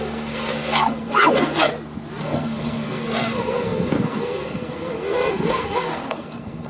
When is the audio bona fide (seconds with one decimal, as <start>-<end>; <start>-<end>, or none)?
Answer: 1.7-2.2